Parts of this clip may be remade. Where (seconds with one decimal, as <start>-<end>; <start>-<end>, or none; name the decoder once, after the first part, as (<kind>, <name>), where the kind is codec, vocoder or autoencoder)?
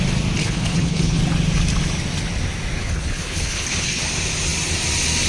0.4-1.2 (codec, HILCodec); 2.8-4.0